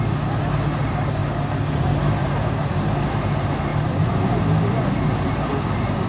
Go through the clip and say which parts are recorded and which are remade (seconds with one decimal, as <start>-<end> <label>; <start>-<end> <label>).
0.0-2.2 recorded; 2.2-2.7 remade; 2.7-6.1 recorded